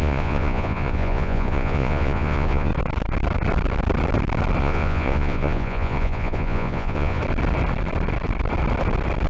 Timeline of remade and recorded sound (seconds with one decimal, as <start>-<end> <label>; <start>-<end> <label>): 0.0-2.7 remade; 2.7-4.6 recorded; 4.6-7.2 remade; 7.2-9.3 recorded